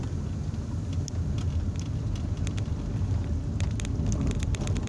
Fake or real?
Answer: real